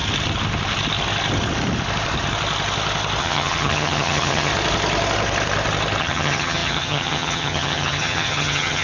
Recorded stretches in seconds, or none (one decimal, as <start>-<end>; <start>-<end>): 0.0-3.2; 4.5-6.0